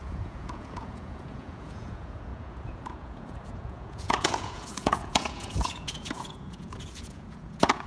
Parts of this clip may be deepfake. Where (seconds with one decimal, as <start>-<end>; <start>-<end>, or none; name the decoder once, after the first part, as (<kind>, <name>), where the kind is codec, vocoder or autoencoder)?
0.0-7.9 (vocoder, Vocos)